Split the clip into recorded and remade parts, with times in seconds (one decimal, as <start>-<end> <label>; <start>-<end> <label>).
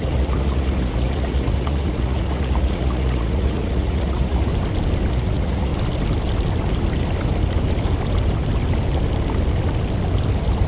0.0-4.5 remade; 4.5-5.1 recorded; 5.1-5.7 remade; 5.7-10.7 recorded